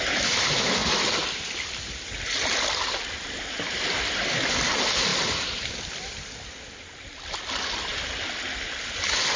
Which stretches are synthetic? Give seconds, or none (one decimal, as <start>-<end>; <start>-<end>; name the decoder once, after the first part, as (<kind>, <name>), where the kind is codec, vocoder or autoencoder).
5.1-5.7 (vocoder, BigVGAN v2)